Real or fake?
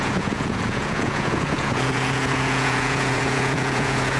fake